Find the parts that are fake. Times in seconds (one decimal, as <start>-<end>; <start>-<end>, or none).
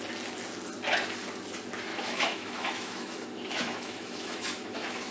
1.9-5.1